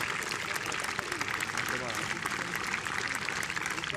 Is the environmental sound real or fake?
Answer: real